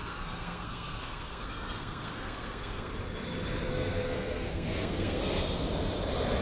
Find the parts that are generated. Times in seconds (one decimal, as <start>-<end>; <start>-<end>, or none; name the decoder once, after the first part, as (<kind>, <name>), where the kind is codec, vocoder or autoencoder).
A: 0.0-2.9 (codec, SNAC); 3.7-5.2